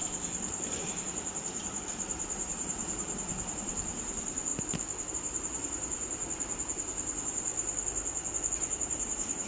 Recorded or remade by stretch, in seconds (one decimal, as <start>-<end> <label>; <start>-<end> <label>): 0.0-0.8 recorded; 0.8-4.5 remade; 4.5-5.1 recorded; 5.1-7.5 remade; 7.5-8.5 recorded; 8.5-9.5 remade